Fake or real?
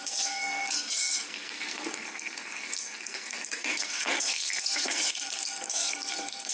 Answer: fake